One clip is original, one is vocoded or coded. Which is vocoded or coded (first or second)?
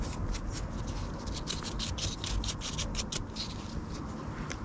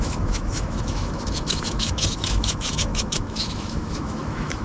second